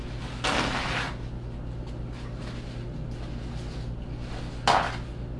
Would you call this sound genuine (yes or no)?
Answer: yes